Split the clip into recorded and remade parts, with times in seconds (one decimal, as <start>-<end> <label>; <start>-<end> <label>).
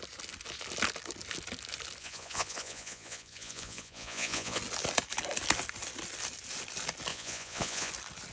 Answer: 0.0-2.0 recorded; 2.0-4.6 remade; 4.6-7.1 recorded; 7.1-7.9 remade; 7.9-8.3 recorded